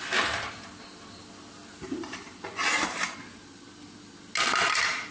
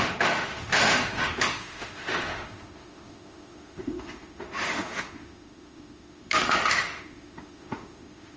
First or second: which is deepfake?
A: second